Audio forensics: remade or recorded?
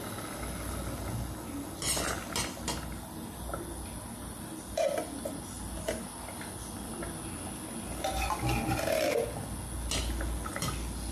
recorded